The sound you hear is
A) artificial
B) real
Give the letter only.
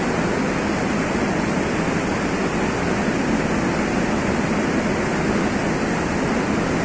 B